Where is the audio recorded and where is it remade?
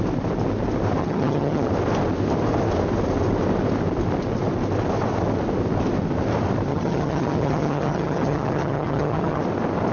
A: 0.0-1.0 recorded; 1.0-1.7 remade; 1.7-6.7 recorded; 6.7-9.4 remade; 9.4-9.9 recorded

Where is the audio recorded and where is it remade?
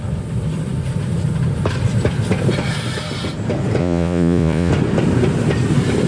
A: 0.0-3.8 recorded; 3.8-4.7 remade; 4.7-6.1 recorded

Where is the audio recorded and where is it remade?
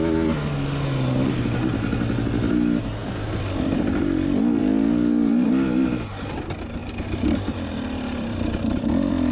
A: 0.0-3.0 recorded; 3.0-3.8 remade; 3.8-4.6 recorded; 4.6-5.5 remade; 5.5-6.8 recorded; 6.8-8.8 remade; 8.8-9.3 recorded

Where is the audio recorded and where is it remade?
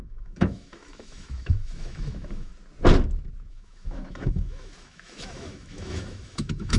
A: 0.0-2.5 remade; 2.5-3.5 recorded; 3.5-6.8 remade